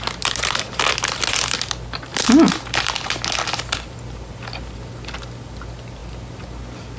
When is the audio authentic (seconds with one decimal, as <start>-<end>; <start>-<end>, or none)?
0.0-7.0